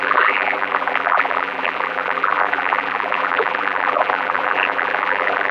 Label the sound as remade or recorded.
remade